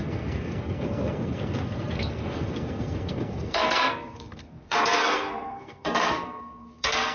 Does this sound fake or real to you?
fake